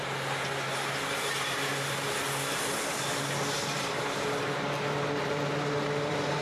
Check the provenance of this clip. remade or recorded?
recorded